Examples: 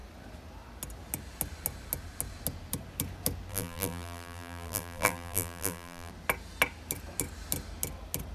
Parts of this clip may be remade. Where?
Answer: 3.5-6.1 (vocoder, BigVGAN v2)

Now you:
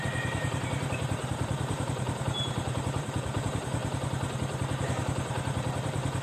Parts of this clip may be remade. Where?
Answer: 0.0-3.8 (vocoder, BigVGAN v2); 4.9-6.2

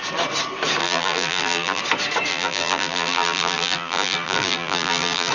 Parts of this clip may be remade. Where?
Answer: 0.8-1.8 (vocoder, BigVGAN v2); 2.3-5.3

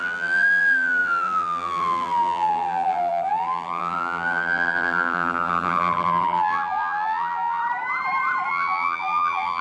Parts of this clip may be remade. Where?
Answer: 0.0-7.6 (vocoder, BigVGAN v2); 8.5-9.6